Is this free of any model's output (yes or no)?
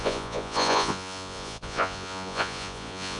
no